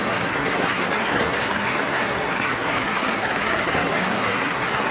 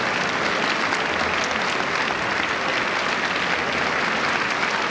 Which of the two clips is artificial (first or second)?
first